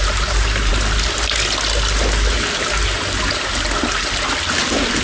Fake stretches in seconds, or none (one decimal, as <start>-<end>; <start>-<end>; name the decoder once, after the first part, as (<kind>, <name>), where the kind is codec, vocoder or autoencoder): none